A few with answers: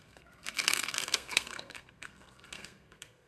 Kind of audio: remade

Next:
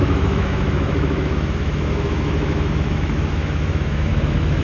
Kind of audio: remade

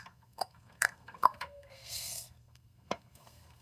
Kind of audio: remade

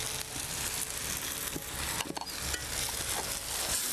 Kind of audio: recorded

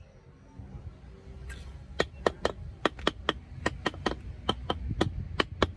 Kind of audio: recorded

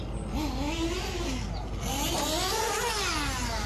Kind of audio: recorded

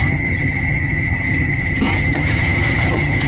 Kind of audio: remade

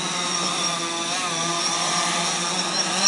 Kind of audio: recorded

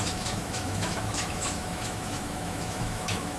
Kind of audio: remade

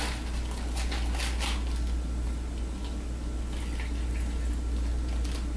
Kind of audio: recorded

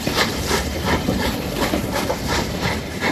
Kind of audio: remade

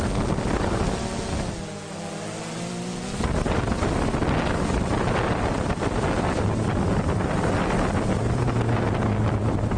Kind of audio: recorded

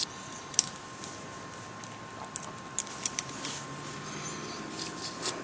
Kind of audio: recorded